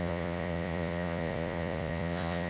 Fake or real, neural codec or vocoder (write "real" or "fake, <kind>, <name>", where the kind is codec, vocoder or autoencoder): fake, vocoder, Vocos